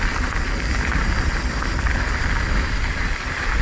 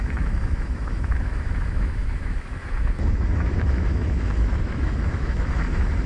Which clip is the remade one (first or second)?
second